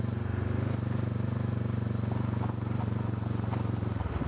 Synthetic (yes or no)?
no